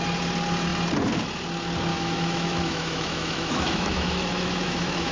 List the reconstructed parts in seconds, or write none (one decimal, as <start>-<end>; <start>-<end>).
1.9-5.1